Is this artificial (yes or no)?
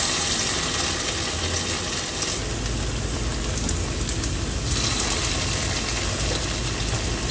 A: no